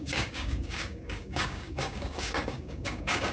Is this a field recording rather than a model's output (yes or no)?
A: no